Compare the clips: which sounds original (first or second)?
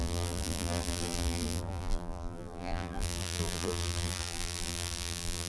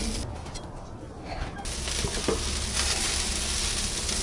second